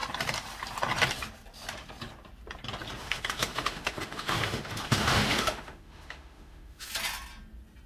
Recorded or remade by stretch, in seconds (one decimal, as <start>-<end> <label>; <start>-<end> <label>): 0.0-3.0 recorded; 3.0-6.9 remade; 6.9-7.9 recorded